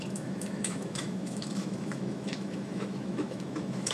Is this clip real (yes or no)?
no